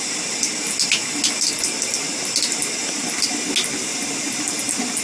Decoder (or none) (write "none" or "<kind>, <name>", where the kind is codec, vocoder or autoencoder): none